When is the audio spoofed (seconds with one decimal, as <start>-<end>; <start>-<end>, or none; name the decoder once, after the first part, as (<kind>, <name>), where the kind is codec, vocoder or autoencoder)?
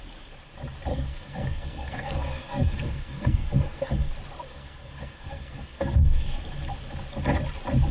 0.9-4.1 (codec, SNAC); 4.5-6.4